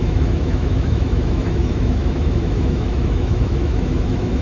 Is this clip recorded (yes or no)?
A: no